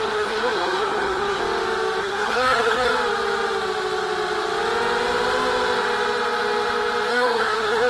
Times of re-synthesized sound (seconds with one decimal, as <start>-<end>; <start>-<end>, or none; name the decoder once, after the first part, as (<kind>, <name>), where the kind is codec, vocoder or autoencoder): 0.0-1.4 (codec, SNAC); 2.0-2.9; 7.1-7.9